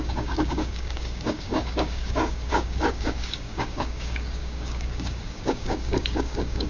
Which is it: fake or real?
fake